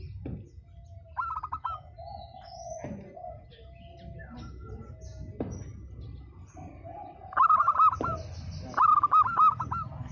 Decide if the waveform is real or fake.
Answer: real